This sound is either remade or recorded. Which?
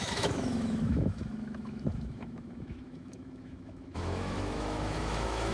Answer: remade